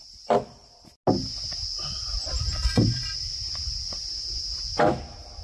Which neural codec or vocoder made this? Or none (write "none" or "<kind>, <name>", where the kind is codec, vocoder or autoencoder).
none